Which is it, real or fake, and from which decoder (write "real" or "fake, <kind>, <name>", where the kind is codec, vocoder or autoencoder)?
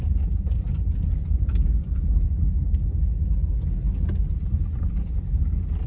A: real